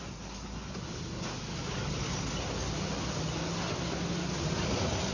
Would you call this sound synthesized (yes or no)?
no